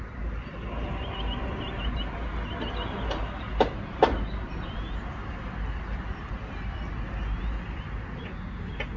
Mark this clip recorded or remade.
recorded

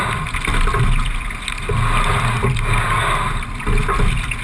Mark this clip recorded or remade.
recorded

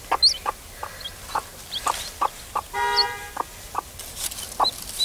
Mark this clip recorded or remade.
recorded